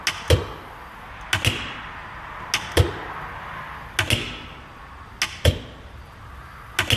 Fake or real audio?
real